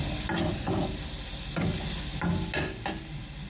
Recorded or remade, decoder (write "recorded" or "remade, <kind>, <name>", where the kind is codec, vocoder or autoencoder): recorded